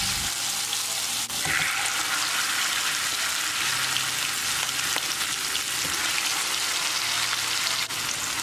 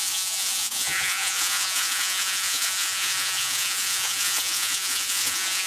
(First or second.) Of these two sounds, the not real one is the second